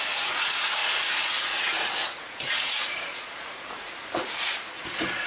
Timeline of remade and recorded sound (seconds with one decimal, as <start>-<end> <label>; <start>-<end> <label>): 0.0-5.3 remade